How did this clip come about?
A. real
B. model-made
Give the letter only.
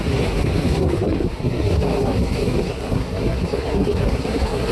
B